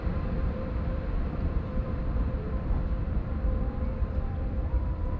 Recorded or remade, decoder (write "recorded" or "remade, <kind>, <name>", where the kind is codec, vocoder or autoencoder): remade, vocoder, BigVGAN v2